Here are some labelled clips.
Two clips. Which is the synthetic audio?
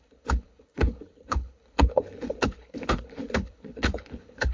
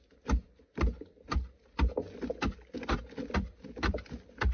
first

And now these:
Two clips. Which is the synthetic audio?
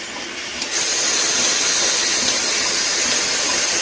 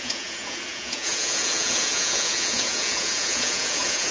second